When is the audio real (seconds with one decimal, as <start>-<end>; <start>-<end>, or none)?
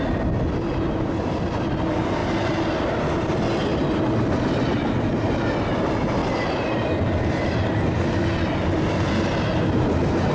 0.0-10.3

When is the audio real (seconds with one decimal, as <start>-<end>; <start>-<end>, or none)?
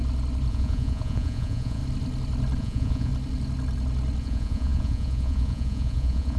0.0-0.5; 1.8-2.6; 3.1-4.2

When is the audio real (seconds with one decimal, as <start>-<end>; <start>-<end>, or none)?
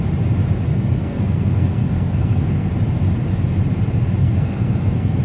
0.0-0.7; 2.7-4.2